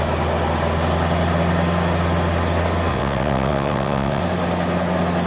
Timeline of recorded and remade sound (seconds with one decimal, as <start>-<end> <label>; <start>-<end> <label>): 0.0-2.9 recorded; 2.9-4.2 remade; 4.2-5.3 recorded